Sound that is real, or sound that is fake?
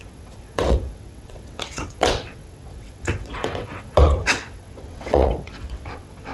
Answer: fake